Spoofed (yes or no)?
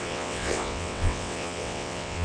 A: yes